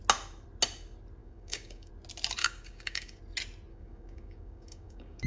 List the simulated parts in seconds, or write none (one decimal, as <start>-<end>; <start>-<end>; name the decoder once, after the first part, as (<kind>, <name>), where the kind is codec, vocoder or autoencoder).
1.2-1.9 (codec, DAC); 2.4-3.2; 3.7-5.3